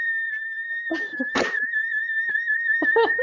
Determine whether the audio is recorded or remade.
remade